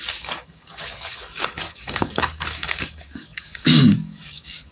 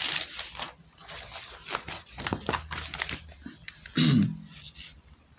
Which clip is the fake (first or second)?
first